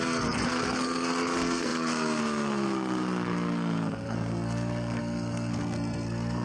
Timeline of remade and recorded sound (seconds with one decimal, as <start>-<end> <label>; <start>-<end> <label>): 0.0-6.4 remade